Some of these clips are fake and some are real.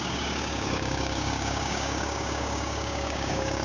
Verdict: fake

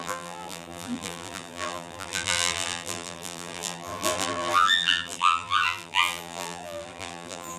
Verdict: fake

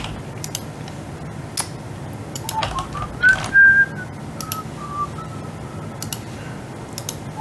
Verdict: real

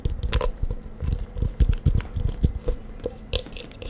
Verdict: real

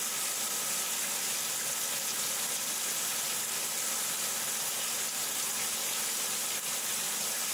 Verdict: real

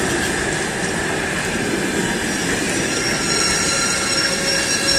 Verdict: real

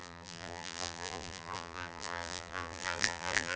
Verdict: fake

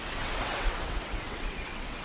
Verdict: fake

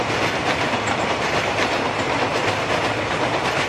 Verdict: real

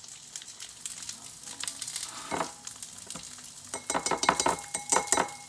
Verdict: real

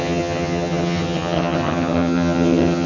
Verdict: fake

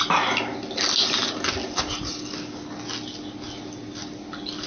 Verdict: real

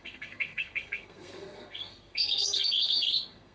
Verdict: fake